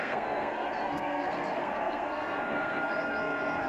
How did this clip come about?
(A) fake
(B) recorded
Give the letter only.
A